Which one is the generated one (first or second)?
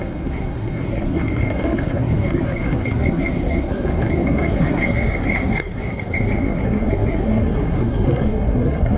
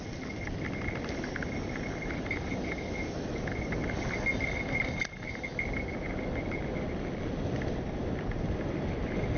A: first